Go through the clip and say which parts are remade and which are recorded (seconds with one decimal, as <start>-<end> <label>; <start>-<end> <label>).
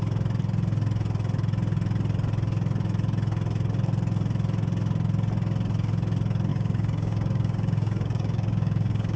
0.0-6.5 recorded; 6.5-9.2 remade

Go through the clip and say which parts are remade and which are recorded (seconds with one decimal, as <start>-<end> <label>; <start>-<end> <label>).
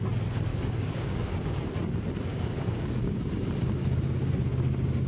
0.0-0.5 recorded; 0.5-1.6 remade; 1.6-2.3 recorded; 2.3-3.2 remade; 3.2-5.1 recorded